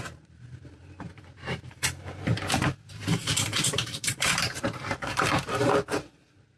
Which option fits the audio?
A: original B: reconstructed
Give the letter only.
B